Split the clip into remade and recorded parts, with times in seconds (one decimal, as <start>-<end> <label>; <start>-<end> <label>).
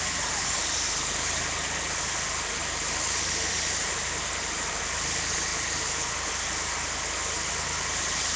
0.0-2.6 recorded; 2.6-4.8 remade; 4.8-5.5 recorded; 5.5-6.1 remade; 6.1-8.4 recorded